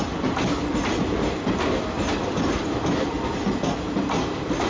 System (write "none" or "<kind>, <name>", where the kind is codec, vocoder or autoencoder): none